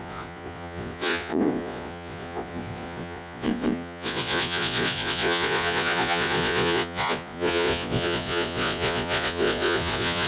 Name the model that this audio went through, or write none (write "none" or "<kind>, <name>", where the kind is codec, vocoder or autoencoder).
vocoder, Vocos